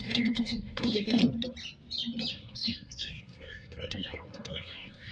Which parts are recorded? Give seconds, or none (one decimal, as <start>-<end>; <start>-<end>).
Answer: 1.2-2.3